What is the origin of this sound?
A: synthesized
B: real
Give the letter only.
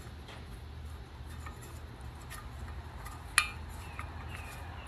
B